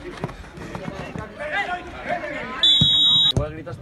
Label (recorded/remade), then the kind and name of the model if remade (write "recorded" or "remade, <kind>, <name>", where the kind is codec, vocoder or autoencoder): recorded